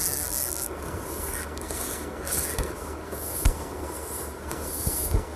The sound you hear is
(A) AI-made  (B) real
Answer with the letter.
A